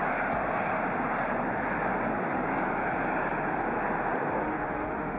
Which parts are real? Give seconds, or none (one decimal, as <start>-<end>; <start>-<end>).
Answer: 0.0-4.4